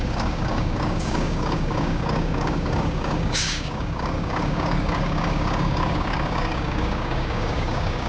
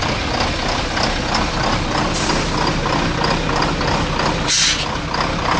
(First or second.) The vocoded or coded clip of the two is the first